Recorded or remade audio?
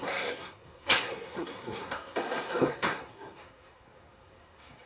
remade